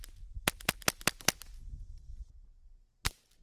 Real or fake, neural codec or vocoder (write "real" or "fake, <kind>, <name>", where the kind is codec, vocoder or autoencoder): real